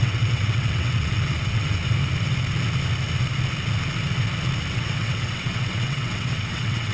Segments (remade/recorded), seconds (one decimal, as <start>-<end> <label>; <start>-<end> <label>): 0.0-1.8 remade; 1.8-4.7 recorded; 4.7-6.9 remade